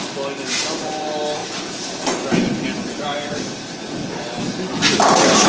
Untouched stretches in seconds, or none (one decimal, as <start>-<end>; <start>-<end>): 0.0-5.5